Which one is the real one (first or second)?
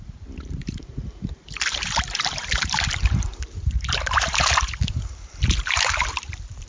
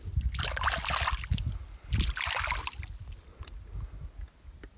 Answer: second